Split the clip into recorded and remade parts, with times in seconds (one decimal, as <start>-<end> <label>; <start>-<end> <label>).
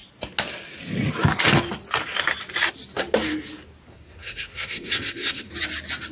0.0-3.9 recorded; 3.9-5.5 remade; 5.5-6.1 recorded